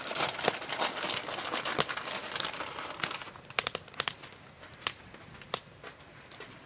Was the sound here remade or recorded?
recorded